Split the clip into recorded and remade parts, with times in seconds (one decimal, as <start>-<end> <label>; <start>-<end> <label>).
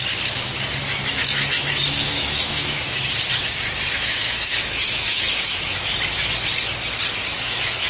0.0-0.8 recorded; 0.8-2.9 remade; 2.9-3.9 recorded; 3.9-5.9 remade; 5.9-7.3 recorded; 7.3-7.9 remade